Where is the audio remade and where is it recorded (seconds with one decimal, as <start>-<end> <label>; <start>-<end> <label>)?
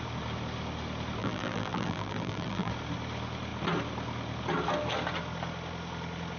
0.0-1.2 recorded; 1.2-2.7 remade; 2.7-6.4 recorded